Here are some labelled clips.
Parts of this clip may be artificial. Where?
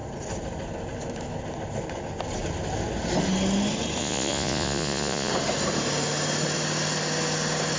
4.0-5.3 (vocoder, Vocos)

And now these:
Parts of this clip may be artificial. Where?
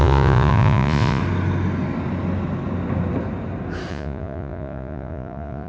0.0-1.2 (vocoder, Vocos); 3.9-5.7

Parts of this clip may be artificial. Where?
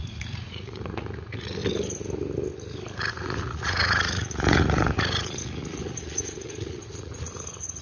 0.0-1.6 (vocoder, Vocos); 3.1-7.8